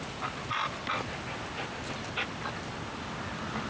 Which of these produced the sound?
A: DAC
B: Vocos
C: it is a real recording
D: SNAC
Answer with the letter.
C